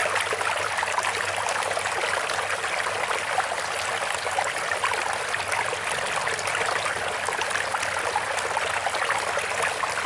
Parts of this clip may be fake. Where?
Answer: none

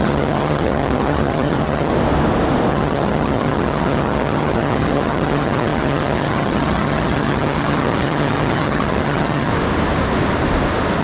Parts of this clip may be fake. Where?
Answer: 0.0-1.9; 2.7-9.5